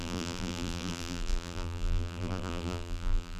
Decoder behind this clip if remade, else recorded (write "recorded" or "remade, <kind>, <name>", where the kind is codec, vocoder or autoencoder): remade, vocoder, BigVGAN v2